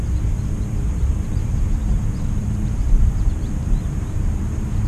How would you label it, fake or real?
fake